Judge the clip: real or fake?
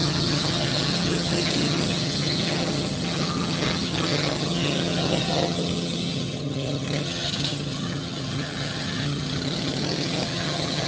fake